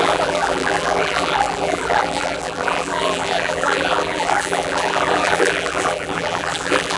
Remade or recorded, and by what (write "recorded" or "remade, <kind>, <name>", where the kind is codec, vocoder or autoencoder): remade, vocoder, BigVGAN v2